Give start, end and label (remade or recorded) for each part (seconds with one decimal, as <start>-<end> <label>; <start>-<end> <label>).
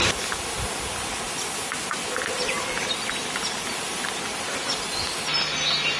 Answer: 0.0-6.0 recorded